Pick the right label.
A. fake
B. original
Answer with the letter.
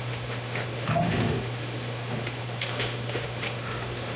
A